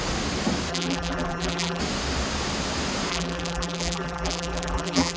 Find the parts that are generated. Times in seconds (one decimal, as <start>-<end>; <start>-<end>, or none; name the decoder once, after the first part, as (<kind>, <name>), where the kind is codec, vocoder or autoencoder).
0.7-1.8 (vocoder, BigVGAN v2); 3.1-5.2